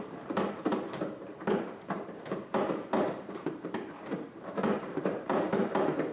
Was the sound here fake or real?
fake